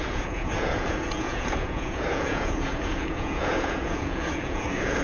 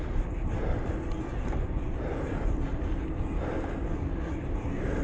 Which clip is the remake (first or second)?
first